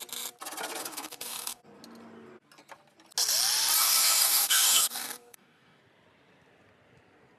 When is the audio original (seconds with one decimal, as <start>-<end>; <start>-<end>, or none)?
0.0-0.8; 1.6-3.8; 5.8-7.4